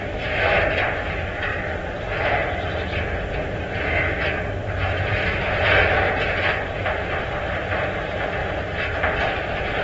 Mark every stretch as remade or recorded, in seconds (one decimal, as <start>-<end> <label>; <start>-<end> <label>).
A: 0.0-9.8 remade